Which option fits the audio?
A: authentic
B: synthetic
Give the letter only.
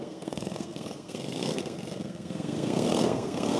B